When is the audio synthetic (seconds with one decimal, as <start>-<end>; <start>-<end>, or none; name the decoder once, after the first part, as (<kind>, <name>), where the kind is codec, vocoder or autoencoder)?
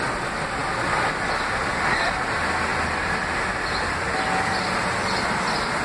none